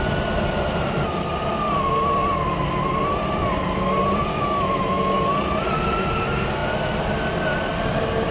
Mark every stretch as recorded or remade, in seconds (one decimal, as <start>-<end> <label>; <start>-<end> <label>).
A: 0.0-4.3 recorded; 4.3-5.3 remade; 5.3-8.3 recorded

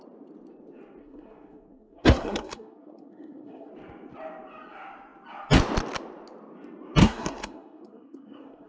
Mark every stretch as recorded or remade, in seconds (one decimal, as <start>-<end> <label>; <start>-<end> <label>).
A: 0.0-1.0 recorded; 1.0-3.7 remade; 3.7-7.0 recorded; 7.0-8.7 remade

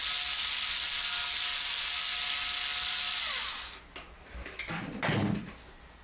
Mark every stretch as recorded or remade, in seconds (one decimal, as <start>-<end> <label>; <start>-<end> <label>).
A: 0.0-6.0 recorded

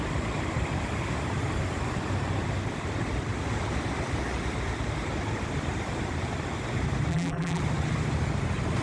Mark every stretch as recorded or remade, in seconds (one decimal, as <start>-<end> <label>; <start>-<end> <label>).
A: 0.0-7.1 recorded; 7.1-7.6 remade; 7.6-8.8 recorded

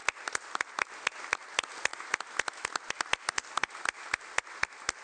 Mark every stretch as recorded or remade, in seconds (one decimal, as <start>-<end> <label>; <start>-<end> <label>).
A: 0.0-5.0 recorded

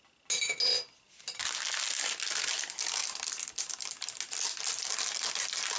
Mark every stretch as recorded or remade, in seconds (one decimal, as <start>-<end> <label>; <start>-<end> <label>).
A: 0.0-3.0 recorded; 3.0-3.7 remade; 3.7-5.8 recorded

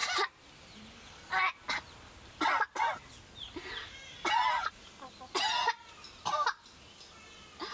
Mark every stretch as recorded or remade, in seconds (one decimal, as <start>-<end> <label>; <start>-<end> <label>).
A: 0.0-7.7 recorded